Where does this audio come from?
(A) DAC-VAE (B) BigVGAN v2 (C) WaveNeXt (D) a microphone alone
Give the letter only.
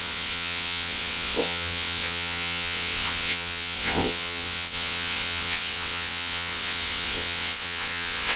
C